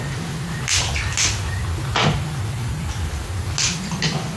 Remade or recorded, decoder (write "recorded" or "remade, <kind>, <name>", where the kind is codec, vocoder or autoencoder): recorded